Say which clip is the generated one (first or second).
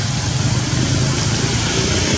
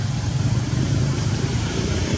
second